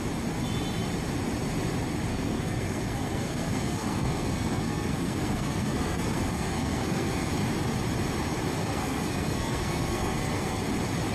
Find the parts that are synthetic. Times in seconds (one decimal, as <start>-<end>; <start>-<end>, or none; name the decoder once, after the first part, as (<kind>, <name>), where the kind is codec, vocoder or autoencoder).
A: 2.1-7.3 (codec, SNAC); 8.6-10.6